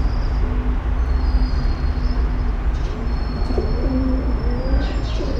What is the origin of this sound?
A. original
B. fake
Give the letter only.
A